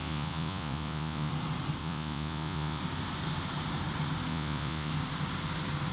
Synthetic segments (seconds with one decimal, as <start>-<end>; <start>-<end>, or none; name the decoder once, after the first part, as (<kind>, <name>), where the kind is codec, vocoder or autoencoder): 0.0-1.3 (vocoder, Vocos); 1.8-2.8; 4.3-4.9